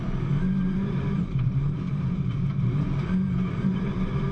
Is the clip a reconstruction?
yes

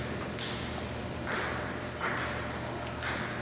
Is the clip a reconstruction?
no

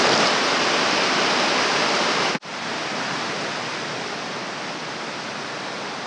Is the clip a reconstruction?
no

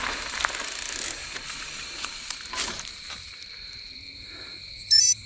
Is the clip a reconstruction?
yes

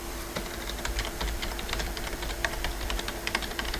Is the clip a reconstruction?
yes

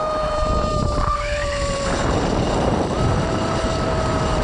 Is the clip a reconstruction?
yes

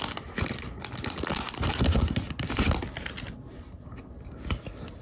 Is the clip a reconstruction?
no